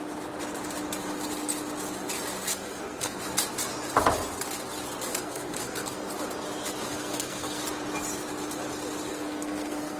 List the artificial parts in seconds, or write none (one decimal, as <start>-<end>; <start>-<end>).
2.5-3.2; 5.1-6.1; 6.9-7.6; 9.1-10.0